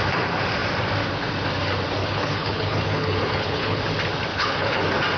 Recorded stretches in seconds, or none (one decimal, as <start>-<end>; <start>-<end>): 0.0-2.0; 3.8-4.3; 4.8-5.2